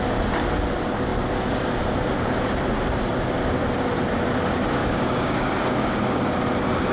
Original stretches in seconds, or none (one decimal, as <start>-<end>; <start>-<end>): 0.0-4.8; 6.2-6.9

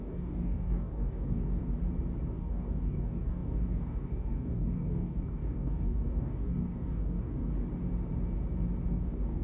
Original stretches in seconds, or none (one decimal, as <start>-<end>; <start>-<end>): 1.6-2.3; 7.5-8.9